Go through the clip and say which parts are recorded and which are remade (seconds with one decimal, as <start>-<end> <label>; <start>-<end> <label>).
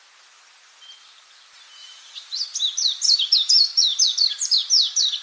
0.0-1.8 recorded; 1.8-4.0 remade; 4.0-5.2 recorded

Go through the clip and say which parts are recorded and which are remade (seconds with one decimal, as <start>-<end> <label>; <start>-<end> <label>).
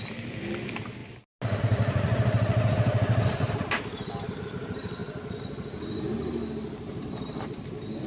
0.0-1.0 remade; 1.0-1.6 recorded; 1.6-5.0 remade; 5.0-7.4 recorded; 7.4-8.1 remade